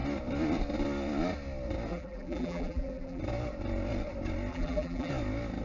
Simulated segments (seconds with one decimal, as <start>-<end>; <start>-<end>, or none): 1.9-3.2; 4.5-5.1